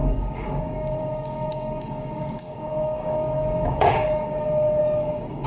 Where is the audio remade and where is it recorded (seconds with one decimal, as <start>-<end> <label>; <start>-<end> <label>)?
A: 0.0-5.5 remade